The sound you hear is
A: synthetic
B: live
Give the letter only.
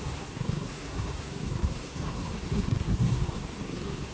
A